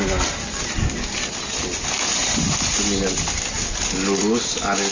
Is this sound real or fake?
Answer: real